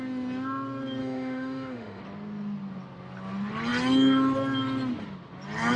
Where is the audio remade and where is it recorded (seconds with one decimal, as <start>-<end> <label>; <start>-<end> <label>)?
0.0-1.0 recorded; 1.0-2.0 remade; 2.0-5.8 recorded